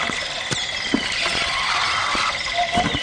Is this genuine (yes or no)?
yes